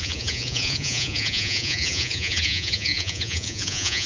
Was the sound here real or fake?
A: fake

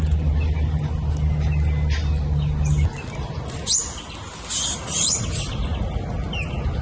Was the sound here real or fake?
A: real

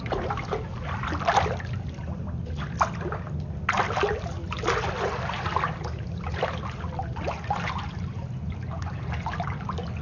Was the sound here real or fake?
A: real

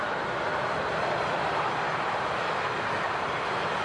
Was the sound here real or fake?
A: real